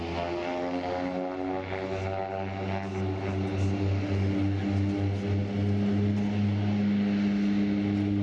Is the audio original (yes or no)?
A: yes